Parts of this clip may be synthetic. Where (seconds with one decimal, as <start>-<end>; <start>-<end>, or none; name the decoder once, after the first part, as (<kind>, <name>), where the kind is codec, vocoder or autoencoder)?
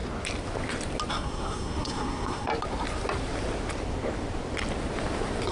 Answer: 1.1-2.5 (codec, SNAC)